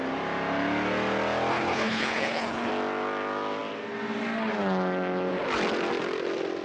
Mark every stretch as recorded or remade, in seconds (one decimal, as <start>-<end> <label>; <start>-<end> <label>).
0.0-1.5 recorded; 1.5-2.7 remade; 2.7-6.6 recorded